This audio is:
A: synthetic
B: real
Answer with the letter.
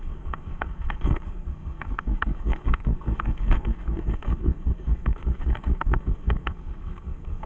A